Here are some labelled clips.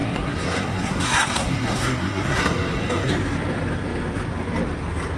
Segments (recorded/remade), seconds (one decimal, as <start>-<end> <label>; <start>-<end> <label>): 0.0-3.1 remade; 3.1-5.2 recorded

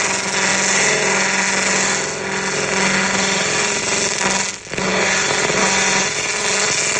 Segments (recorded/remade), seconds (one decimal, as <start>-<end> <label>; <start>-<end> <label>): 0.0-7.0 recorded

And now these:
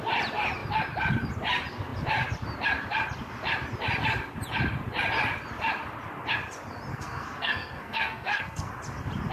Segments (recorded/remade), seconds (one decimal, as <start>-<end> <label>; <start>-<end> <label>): 0.0-6.9 recorded; 6.9-8.7 remade; 8.7-9.3 recorded

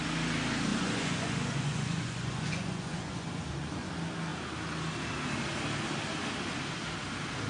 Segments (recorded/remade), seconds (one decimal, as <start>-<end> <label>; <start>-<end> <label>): 0.0-0.7 recorded; 0.7-3.9 remade; 3.9-7.5 recorded